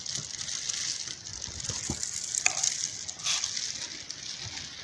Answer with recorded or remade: recorded